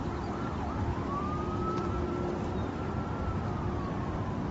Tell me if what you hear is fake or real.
fake